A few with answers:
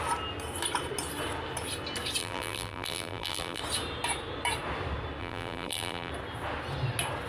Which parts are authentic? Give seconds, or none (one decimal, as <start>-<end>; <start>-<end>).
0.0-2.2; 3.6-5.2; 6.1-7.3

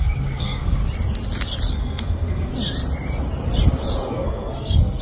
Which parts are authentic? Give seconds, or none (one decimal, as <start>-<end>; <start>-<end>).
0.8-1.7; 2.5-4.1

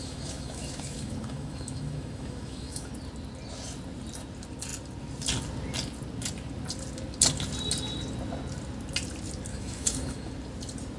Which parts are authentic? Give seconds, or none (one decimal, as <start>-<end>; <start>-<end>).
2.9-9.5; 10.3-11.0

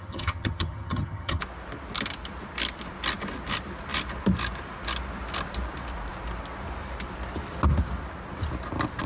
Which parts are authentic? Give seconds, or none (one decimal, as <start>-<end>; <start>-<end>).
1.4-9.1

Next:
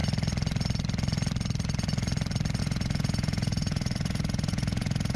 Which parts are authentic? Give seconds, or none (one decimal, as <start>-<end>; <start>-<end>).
0.0-2.6